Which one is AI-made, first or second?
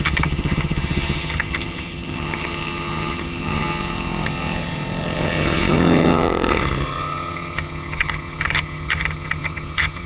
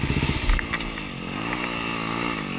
first